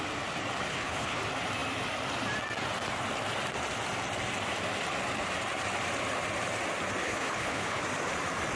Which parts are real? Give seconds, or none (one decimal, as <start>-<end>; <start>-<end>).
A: 0.0-0.7; 1.2-7.0; 7.8-8.6